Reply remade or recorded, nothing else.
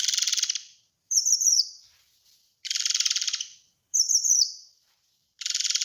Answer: remade